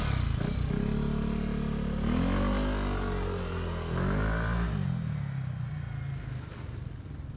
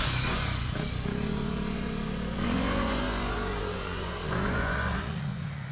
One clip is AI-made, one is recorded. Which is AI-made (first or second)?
second